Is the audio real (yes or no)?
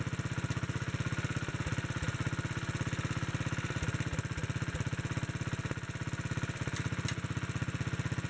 yes